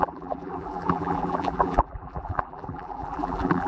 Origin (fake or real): fake